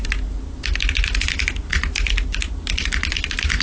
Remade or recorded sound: recorded